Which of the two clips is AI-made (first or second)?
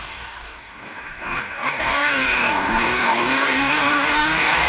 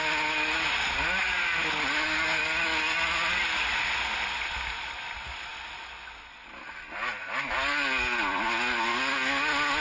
first